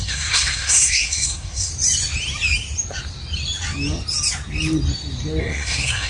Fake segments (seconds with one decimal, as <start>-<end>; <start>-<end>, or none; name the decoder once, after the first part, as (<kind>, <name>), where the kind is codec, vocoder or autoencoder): 0.0-1.7 (codec, SNAC); 5.4-6.1